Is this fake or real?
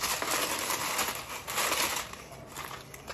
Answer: real